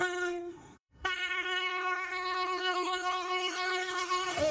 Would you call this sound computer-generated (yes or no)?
yes